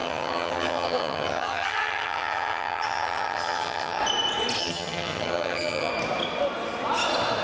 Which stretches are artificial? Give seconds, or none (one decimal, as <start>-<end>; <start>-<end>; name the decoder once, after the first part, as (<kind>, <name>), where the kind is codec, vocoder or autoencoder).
0.0-4.0 (vocoder, HiFi-GAN); 4.6-5.9